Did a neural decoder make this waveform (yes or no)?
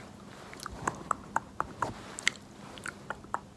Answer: no